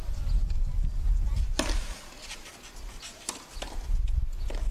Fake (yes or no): no